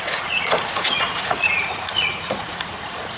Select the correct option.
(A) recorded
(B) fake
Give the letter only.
B